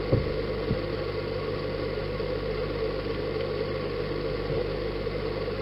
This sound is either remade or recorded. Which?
recorded